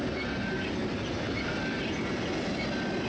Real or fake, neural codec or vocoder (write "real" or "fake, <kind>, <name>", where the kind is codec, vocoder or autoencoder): real